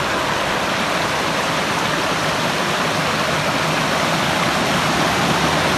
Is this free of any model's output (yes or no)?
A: yes